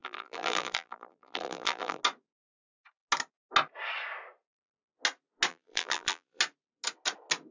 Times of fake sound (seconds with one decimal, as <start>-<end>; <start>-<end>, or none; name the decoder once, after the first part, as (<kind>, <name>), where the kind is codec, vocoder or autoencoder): 0.0-2.0 (vocoder, BigVGAN v2); 5.5-6.4